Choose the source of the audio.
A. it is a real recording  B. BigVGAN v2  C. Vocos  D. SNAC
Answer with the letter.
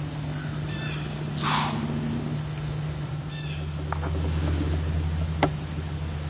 A